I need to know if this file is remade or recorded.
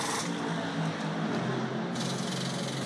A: recorded